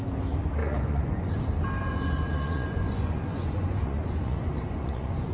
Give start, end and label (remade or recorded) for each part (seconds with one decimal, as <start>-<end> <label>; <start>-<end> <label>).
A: 0.0-0.6 recorded; 0.6-1.3 remade; 1.3-1.8 recorded; 1.8-5.3 remade